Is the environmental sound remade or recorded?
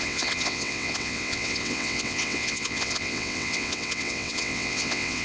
remade